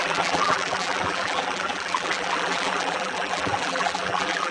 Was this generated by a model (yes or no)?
yes